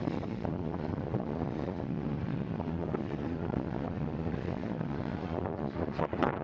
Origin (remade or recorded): remade